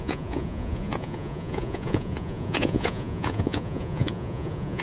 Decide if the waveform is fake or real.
fake